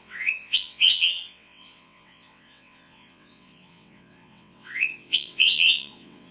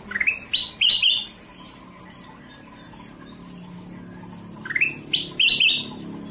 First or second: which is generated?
first